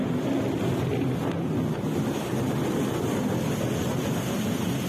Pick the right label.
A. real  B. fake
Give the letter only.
A